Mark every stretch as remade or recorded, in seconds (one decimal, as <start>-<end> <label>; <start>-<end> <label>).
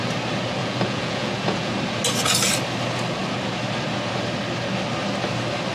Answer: 0.0-0.6 recorded; 0.6-1.8 remade; 1.8-5.7 recorded